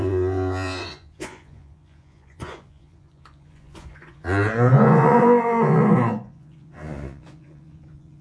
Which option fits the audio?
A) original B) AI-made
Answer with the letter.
B